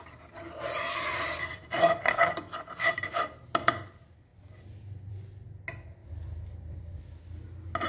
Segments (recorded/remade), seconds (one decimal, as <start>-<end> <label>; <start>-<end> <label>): 0.0-1.6 recorded; 1.6-2.4 remade; 2.4-4.3 recorded; 4.3-5.1 remade; 5.1-6.0 recorded; 6.0-7.2 remade; 7.2-7.9 recorded